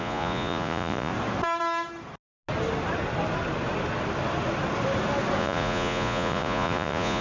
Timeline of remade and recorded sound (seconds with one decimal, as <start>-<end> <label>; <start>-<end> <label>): 0.0-1.1 remade; 1.1-5.4 recorded; 5.4-7.2 remade